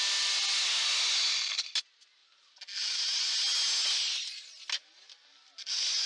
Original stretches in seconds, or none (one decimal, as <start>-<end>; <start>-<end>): 0.0-6.1